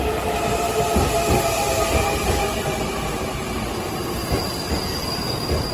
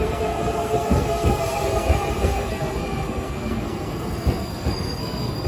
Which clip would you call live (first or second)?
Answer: first